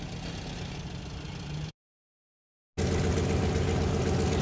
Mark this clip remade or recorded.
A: recorded